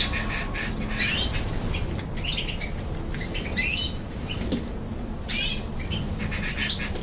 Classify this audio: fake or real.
real